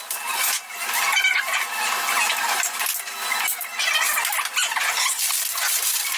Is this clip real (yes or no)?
yes